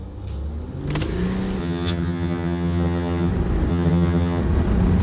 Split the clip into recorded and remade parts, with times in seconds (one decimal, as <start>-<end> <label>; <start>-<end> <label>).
0.0-1.6 recorded; 1.6-3.3 remade; 3.3-3.7 recorded; 3.7-4.4 remade; 4.4-5.0 recorded